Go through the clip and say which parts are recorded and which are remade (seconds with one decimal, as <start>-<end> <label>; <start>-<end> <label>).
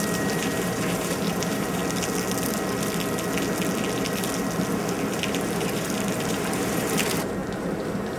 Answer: 0.0-1.8 remade; 1.8-5.3 recorded; 5.3-8.2 remade